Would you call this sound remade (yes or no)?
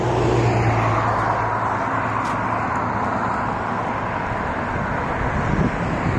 no